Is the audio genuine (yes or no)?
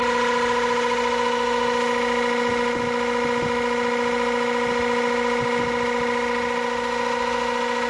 yes